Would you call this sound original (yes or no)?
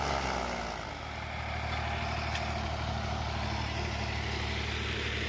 yes